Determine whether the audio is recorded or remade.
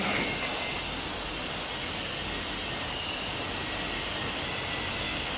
recorded